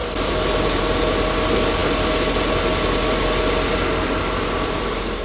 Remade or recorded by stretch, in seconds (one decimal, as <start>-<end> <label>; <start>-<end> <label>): 0.0-5.2 recorded

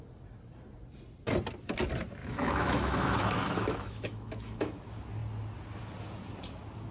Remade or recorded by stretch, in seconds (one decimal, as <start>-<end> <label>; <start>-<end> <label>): 0.0-2.2 recorded; 2.2-4.8 remade; 4.8-6.9 recorded

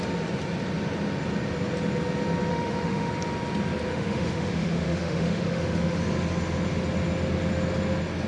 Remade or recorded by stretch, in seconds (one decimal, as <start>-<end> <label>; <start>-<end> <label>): 0.0-2.5 recorded; 2.5-3.1 remade; 3.1-3.9 recorded; 3.9-6.0 remade; 6.0-8.3 recorded

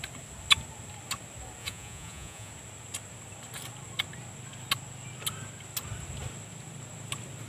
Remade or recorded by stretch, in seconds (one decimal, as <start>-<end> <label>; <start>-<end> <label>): 0.0-1.6 recorded; 1.6-2.5 remade; 2.5-7.5 recorded